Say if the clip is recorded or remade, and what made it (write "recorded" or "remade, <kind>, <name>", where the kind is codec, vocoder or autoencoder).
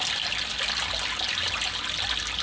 recorded